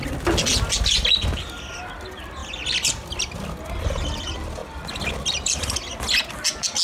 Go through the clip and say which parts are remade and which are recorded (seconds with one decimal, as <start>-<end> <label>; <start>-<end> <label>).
0.0-6.8 recorded